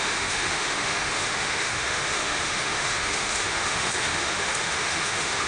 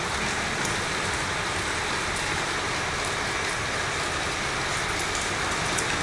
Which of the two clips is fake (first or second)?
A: first